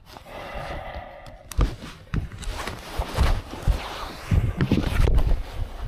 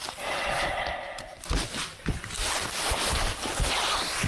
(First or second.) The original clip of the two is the second